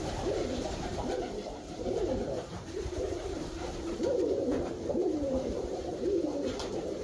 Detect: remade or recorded remade